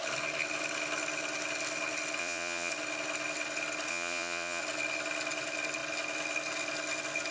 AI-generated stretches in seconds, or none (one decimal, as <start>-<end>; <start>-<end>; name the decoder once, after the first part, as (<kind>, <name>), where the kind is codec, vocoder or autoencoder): 2.2-2.7 (vocoder, Vocos); 3.9-4.6